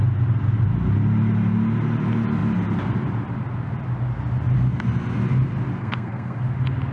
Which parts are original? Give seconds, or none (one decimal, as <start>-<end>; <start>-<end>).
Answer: 0.0-5.8; 6.4-6.9